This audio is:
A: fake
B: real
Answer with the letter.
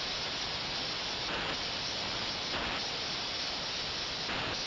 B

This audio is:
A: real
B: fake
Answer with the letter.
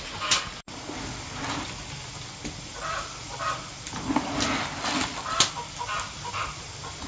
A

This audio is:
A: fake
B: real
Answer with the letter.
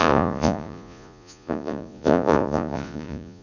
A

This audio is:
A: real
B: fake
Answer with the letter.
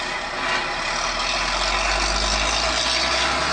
A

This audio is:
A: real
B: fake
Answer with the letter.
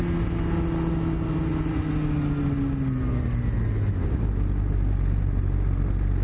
A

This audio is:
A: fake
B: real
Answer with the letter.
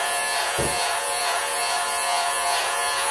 A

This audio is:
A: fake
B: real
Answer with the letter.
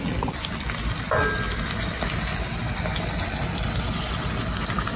B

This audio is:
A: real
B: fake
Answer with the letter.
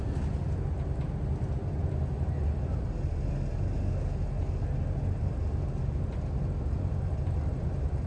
A